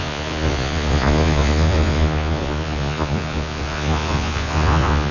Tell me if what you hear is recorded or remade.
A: remade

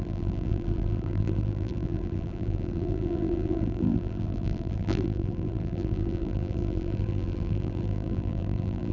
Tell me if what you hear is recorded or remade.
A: remade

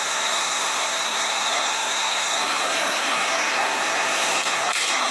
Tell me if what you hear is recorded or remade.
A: remade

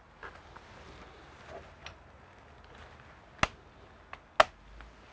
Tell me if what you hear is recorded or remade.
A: recorded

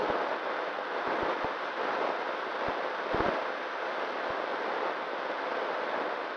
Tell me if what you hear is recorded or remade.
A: recorded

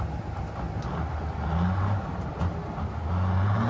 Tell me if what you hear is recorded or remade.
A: recorded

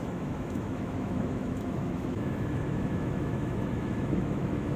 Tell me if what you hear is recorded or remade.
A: remade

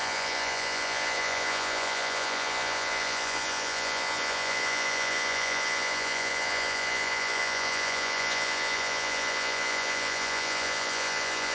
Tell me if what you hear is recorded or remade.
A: remade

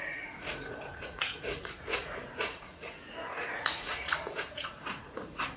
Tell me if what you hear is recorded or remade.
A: remade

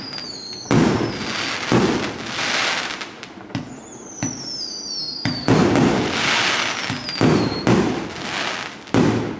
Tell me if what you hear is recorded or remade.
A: recorded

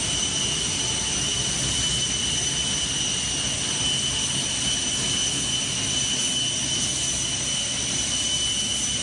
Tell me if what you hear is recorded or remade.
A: recorded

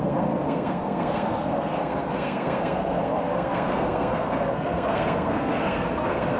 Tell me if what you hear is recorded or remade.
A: remade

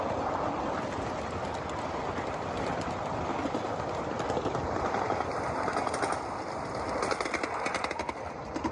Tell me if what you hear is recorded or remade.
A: recorded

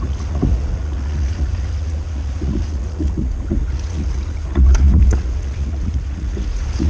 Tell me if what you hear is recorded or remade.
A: remade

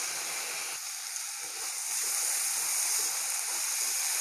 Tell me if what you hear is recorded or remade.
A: recorded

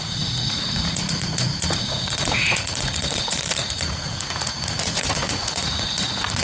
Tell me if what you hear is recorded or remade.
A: remade